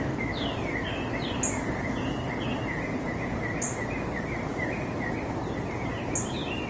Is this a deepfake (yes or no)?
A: no